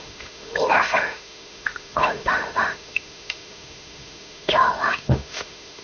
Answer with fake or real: fake